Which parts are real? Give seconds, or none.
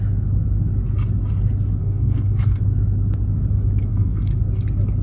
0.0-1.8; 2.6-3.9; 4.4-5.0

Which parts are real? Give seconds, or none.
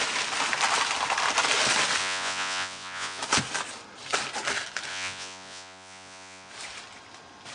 0.0-2.0; 3.2-4.9; 6.5-7.5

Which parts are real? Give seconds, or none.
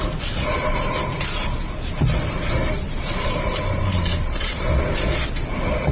0.0-5.9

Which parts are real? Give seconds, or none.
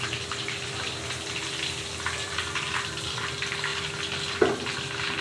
0.0-5.2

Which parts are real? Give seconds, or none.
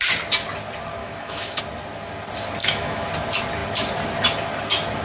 0.0-1.0; 1.6-2.6; 3.1-5.0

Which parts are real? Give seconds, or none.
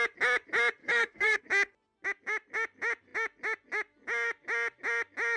0.0-0.8; 1.4-5.4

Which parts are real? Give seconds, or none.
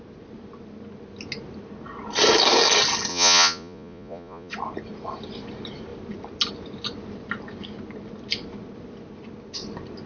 0.0-3.1; 4.5-10.1